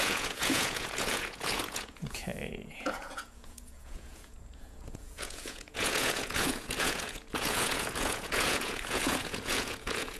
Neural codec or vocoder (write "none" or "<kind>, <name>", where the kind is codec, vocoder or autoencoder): vocoder, Vocos